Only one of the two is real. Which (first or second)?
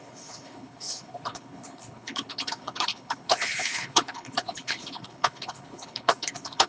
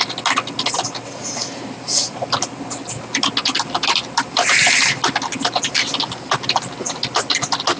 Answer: second